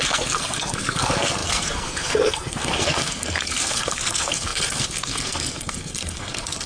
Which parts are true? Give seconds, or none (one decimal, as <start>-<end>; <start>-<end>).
none